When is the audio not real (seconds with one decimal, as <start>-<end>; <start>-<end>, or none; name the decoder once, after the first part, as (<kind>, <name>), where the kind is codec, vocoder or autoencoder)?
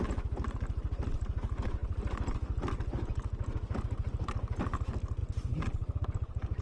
1.8-3.8 (vocoder, BigVGAN v2); 5.2-6.6